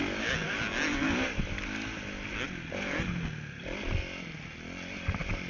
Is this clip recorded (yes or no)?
yes